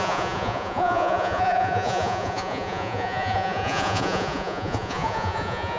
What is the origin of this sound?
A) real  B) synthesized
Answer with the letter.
B